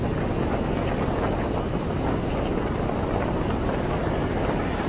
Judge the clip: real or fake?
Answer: real